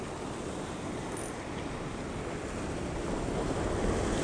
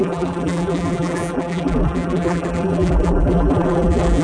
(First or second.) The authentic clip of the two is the first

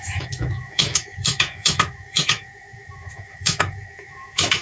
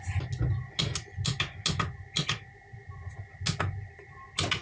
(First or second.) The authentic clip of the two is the second